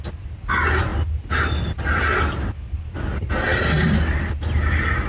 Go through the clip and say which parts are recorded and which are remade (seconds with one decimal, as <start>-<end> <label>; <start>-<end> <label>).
0.0-3.5 recorded; 3.5-4.3 remade; 4.3-5.1 recorded

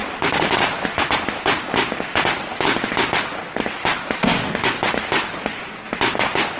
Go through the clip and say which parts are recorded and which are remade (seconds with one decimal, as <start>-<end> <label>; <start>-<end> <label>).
0.0-2.5 remade; 2.5-6.6 recorded

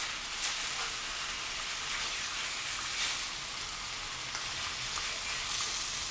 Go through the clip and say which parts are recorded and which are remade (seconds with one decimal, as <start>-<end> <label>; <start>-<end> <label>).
0.0-3.7 remade; 3.7-6.1 recorded

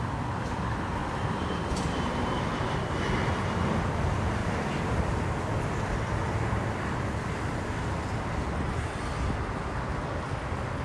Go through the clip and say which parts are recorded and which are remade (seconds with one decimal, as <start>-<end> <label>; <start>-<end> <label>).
0.0-1.0 recorded; 1.0-3.3 remade; 3.3-4.4 recorded; 4.4-9.3 remade; 9.3-10.8 recorded

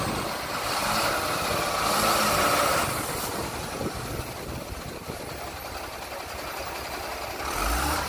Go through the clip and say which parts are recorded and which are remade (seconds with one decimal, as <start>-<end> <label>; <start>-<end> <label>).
0.0-8.1 recorded

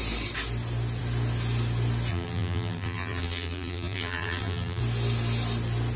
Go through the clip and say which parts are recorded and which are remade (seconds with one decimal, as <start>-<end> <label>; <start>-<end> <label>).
0.0-2.1 recorded; 2.1-4.8 remade; 4.8-6.0 recorded

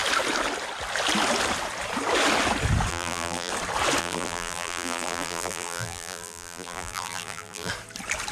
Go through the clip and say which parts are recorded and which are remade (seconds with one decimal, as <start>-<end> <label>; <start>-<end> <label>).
0.0-2.9 recorded; 2.9-3.5 remade; 3.5-4.0 recorded; 4.0-7.7 remade; 7.7-8.3 recorded